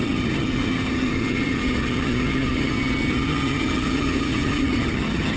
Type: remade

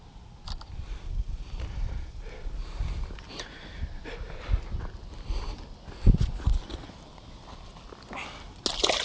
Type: recorded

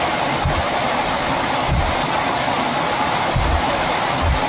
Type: recorded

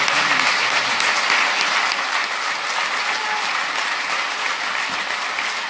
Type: recorded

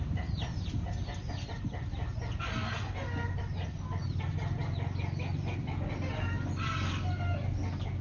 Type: recorded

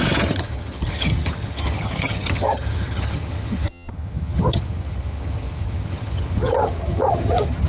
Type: remade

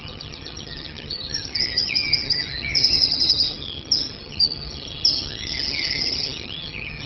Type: remade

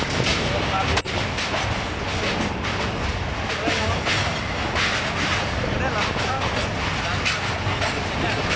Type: recorded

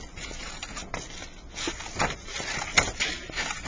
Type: recorded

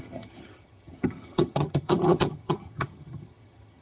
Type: remade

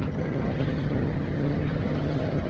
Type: remade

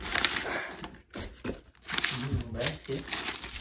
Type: recorded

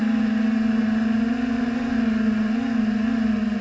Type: recorded